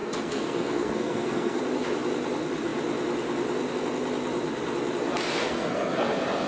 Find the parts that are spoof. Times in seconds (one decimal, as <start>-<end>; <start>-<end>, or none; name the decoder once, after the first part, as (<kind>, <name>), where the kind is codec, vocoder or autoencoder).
0.0-1.6 (codec, SNAC); 5.4-6.0